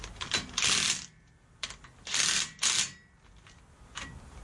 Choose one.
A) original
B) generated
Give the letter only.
A